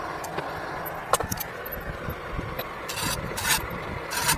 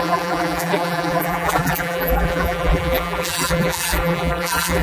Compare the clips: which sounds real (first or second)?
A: first